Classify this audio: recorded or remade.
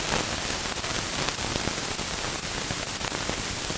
recorded